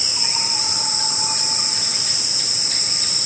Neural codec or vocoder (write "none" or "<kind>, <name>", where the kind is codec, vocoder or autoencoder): none